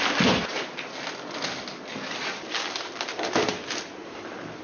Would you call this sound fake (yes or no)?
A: yes